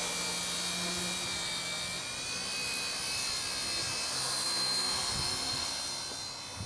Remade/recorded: recorded